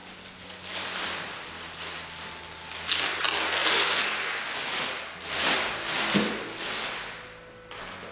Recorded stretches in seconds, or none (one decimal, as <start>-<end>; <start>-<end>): 1.0-3.6; 6.0-8.1